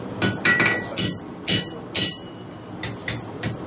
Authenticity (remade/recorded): recorded